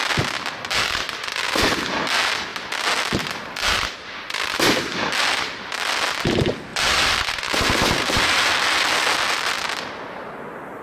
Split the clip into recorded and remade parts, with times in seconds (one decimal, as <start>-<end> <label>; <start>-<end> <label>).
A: 0.0-10.8 recorded